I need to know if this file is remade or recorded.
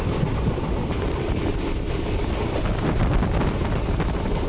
recorded